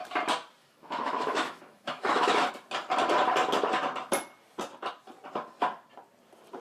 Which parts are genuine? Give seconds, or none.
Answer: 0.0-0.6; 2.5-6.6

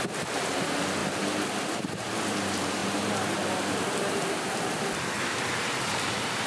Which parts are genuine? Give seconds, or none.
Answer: 0.0-6.5